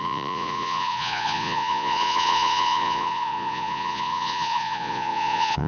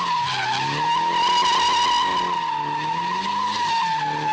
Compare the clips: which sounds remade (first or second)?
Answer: first